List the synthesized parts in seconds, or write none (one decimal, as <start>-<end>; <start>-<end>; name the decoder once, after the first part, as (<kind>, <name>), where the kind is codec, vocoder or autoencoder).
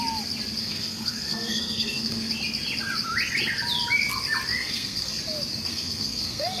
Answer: 0.6-2.3 (codec, SNAC); 4.5-5.2; 5.7-6.6